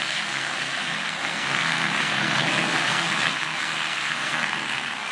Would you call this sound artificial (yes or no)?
yes